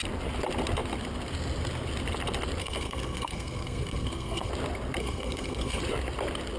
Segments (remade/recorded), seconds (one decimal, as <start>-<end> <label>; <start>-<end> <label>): 0.0-2.6 recorded; 2.6-4.5 remade; 4.5-5.0 recorded; 5.0-5.8 remade; 5.8-6.6 recorded